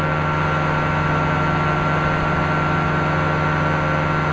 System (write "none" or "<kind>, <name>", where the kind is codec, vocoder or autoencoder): none